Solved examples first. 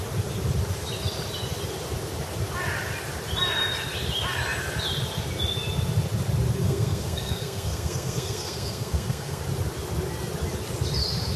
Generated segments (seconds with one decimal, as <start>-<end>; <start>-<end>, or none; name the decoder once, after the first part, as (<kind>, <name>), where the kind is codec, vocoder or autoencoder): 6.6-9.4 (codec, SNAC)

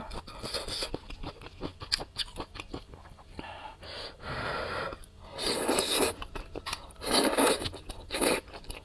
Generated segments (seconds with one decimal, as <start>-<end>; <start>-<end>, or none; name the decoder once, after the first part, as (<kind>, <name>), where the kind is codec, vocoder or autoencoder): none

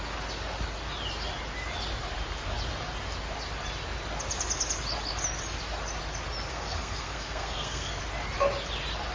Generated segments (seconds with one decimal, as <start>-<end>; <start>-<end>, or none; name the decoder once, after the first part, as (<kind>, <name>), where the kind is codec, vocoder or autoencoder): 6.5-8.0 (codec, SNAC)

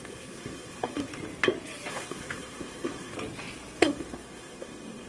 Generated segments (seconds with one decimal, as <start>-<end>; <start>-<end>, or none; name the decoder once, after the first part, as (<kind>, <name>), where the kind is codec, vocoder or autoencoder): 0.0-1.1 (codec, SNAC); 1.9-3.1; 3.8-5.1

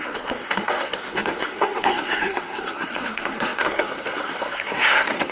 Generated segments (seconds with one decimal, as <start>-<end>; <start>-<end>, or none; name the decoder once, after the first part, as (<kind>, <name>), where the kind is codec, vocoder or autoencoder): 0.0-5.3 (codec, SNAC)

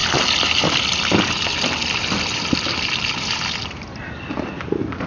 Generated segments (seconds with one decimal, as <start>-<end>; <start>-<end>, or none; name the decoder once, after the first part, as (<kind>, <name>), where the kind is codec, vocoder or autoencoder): none

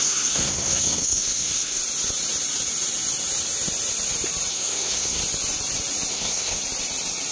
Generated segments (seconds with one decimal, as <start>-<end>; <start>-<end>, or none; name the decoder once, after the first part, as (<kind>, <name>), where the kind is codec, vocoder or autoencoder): 0.0-1.8 (codec, SNAC); 4.5-5.2; 6.1-6.6

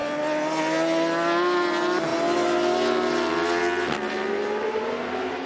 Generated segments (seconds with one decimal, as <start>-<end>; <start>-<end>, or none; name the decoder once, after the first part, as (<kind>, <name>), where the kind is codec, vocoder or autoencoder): none